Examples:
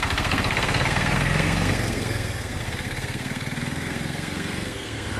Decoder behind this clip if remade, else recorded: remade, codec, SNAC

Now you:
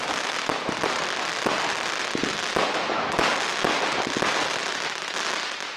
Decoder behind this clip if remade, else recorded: recorded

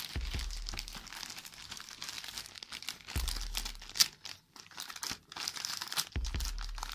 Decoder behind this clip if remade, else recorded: recorded